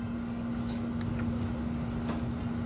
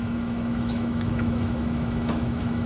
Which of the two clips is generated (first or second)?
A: second